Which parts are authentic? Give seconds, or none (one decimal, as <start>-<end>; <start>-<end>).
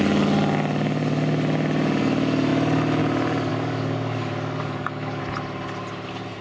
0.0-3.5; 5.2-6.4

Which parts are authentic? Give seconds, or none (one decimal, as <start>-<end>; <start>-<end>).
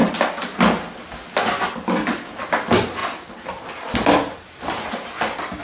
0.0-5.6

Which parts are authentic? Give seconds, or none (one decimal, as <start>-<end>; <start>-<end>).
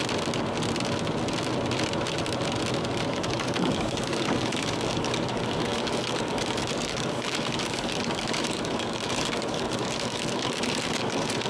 0.0-3.1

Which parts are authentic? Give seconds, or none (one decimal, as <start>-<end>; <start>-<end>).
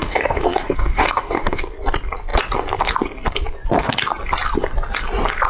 1.6-5.5